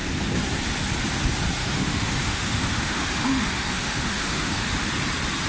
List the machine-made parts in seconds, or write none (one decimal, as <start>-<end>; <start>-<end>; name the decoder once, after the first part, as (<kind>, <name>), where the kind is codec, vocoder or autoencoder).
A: 1.6-4.9 (autoencoder, DAC-VAE)